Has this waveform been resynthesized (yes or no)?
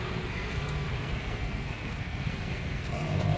yes